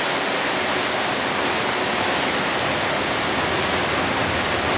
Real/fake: real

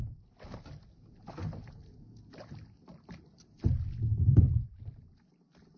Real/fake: real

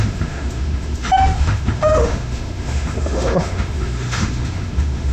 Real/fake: fake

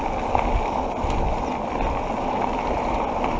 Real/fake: real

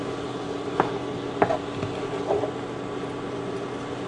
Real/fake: real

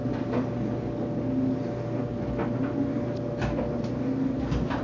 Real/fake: real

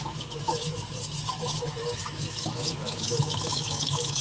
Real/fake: fake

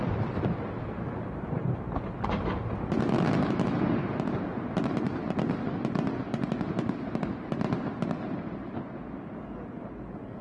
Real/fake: real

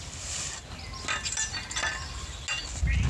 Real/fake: real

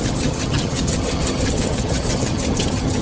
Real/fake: fake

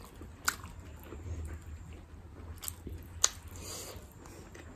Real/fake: real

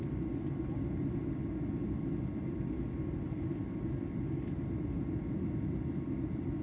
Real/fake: real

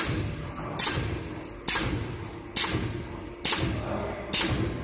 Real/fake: real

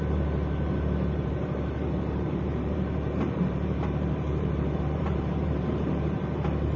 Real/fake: fake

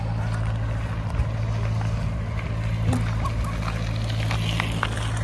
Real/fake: real